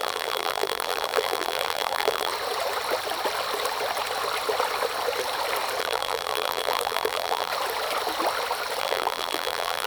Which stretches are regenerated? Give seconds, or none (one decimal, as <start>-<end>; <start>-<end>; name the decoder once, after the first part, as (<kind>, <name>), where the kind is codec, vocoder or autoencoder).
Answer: 0.0-2.3 (vocoder, BigVGAN v2); 5.8-7.5; 8.8-9.9